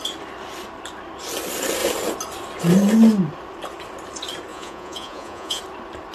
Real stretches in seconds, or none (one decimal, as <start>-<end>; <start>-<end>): 0.0-4.5; 5.6-6.1